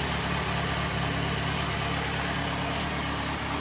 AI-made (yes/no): no